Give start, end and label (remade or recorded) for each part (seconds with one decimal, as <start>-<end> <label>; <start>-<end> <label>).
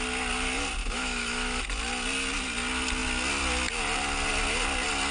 0.0-0.8 recorded; 0.8-1.6 remade; 1.6-5.1 recorded